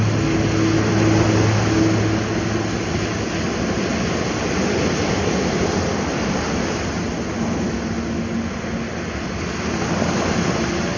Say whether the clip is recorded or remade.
recorded